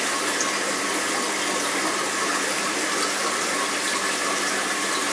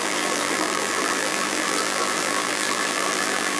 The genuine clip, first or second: first